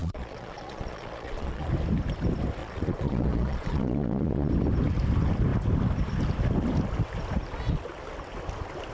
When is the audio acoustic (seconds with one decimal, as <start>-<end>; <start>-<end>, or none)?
1.7-2.6; 4.5-8.9